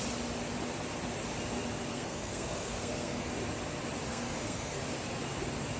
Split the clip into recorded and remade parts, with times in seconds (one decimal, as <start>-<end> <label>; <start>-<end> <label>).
0.0-1.9 recorded; 1.9-3.3 remade; 3.3-4.1 recorded; 4.1-4.8 remade; 4.8-5.8 recorded